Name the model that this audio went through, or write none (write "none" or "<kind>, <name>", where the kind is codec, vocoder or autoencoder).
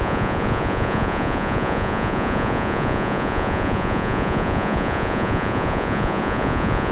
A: vocoder, Vocos